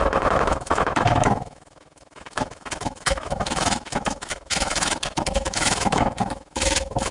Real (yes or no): no